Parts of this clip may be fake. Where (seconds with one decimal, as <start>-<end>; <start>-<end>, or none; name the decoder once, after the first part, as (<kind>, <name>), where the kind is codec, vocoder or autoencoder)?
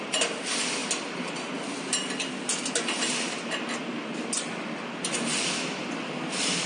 none